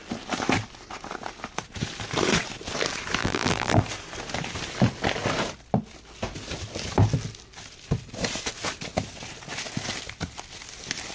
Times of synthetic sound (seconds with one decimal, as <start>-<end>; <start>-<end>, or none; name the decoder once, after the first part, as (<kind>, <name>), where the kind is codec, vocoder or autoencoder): 3.2-3.8 (vocoder, BigVGAN v2)